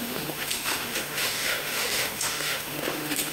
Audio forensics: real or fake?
fake